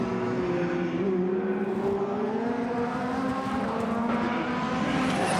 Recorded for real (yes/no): yes